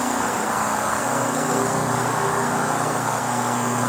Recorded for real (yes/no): no